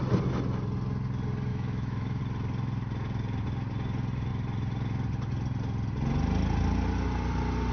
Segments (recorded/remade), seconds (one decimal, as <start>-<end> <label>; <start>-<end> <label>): 0.0-1.5 recorded; 1.5-2.2 remade; 2.2-7.7 recorded